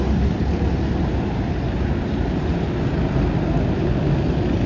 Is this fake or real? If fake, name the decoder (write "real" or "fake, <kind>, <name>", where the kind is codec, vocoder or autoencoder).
real